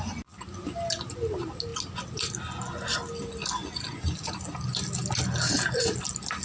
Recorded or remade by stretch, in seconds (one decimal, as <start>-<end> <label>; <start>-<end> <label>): 0.0-6.4 recorded